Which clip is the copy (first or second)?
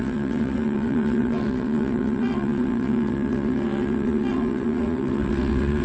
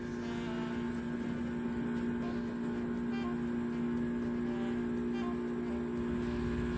first